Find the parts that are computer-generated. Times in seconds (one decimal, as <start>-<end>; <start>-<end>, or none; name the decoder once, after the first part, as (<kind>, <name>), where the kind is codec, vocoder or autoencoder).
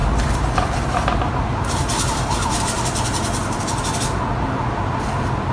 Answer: 0.0-2.6 (vocoder, BigVGAN v2)